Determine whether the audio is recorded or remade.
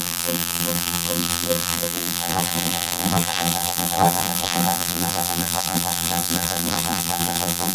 remade